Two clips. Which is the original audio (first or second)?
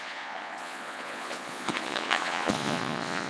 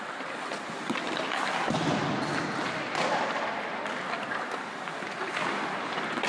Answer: second